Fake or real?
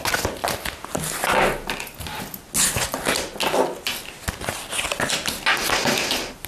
real